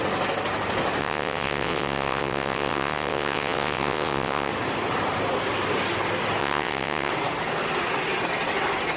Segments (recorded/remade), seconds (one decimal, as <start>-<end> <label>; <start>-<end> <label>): 0.0-1.0 recorded; 1.0-4.5 remade; 4.5-6.4 recorded; 6.4-7.1 remade; 7.1-9.0 recorded